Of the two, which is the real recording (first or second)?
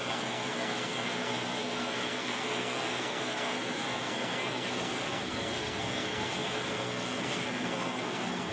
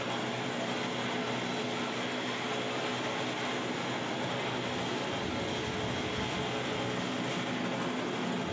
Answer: second